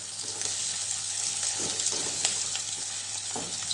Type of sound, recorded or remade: remade